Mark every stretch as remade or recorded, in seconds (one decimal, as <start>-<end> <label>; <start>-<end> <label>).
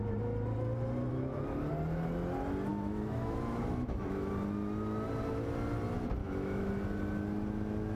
0.0-1.1 recorded; 1.1-1.7 remade; 1.7-2.7 recorded; 2.7-4.3 remade; 4.3-6.2 recorded; 6.2-6.7 remade; 6.7-7.9 recorded